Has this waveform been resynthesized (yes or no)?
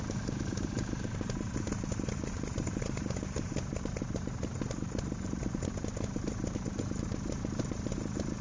yes